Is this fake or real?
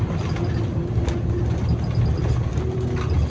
real